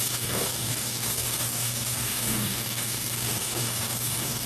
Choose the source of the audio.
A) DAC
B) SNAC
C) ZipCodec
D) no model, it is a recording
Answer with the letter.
A